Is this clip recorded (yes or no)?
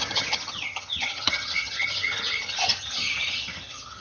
no